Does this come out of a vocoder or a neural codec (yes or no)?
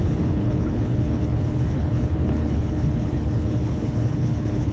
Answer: yes